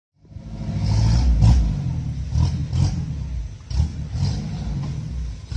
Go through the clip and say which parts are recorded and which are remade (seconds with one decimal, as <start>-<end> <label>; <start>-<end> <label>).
0.0-3.9 recorded; 3.9-5.1 remade; 5.1-5.6 recorded